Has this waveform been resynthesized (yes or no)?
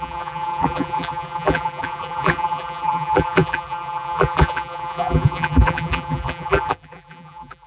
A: yes